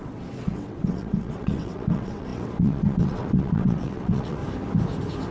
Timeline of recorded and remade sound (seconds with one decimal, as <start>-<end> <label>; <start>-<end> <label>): 0.0-4.4 remade; 4.4-5.3 recorded